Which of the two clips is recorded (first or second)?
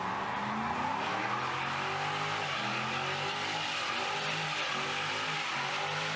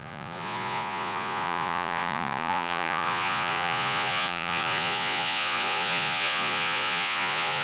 first